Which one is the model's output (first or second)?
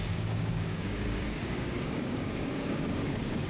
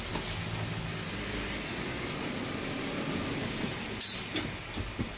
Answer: first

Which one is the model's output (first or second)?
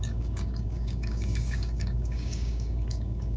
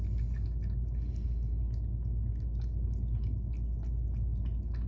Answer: first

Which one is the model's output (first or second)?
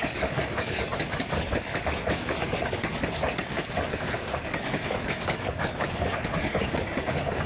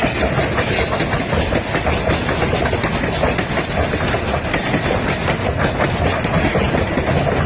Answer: first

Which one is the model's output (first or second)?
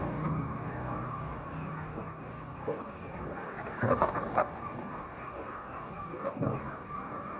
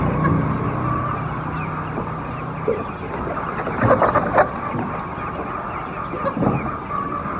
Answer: first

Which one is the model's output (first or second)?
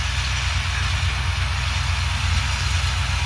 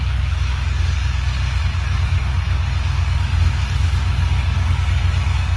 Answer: second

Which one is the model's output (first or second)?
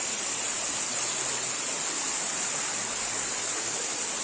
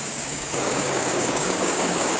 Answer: second